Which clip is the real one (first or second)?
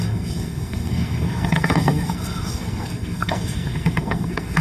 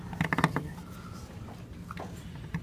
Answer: second